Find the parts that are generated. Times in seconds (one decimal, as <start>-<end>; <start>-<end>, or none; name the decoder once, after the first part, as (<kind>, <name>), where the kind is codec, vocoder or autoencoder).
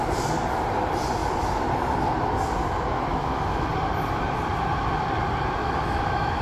3.1-3.7 (autoencoder, DAC-VAE); 5.6-6.4